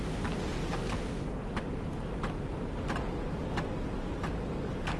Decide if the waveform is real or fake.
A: real